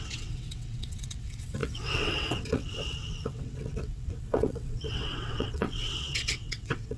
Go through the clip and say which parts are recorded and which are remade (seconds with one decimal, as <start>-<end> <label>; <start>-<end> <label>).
0.0-7.0 remade